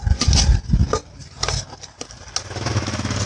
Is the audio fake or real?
real